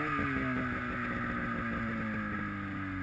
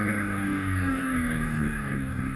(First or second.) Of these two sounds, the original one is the first